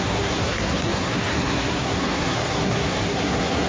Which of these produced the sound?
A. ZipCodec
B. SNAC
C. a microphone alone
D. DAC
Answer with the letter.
B